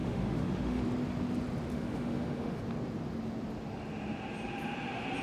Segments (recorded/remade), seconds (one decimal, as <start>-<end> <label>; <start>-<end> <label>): 0.0-0.8 remade; 0.8-1.7 recorded; 1.7-2.6 remade; 2.6-5.2 recorded